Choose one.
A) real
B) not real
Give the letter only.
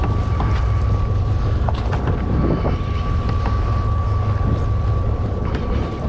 A